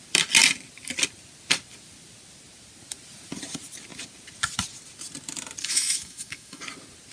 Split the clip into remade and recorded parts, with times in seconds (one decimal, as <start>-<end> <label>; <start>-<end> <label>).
0.0-5.6 recorded; 5.6-6.6 remade; 6.6-7.1 recorded